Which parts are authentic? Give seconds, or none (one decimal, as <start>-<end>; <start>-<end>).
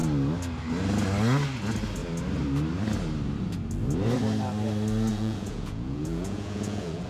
0.0-5.1